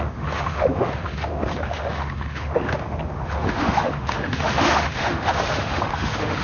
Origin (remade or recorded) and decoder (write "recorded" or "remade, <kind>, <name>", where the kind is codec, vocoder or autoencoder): remade, autoencoder, DAC-VAE